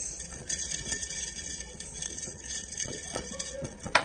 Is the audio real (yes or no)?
no